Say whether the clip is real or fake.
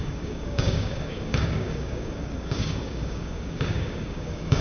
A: fake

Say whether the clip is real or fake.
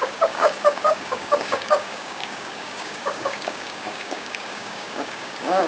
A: fake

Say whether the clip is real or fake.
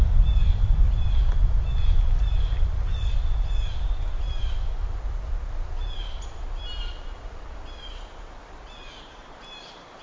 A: real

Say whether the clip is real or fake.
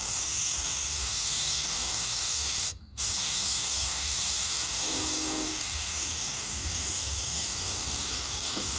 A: fake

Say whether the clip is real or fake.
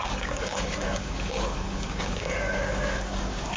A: fake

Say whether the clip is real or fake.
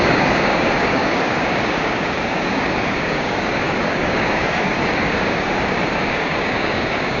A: fake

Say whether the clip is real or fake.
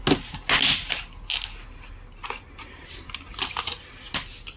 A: real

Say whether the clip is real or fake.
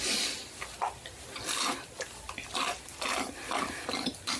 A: real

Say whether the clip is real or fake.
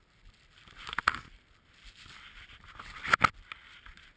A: real